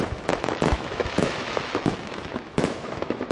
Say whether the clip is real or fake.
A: fake